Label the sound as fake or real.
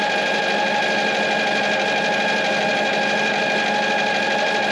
real